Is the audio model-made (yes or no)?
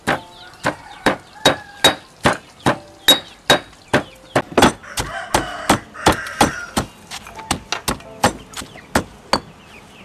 no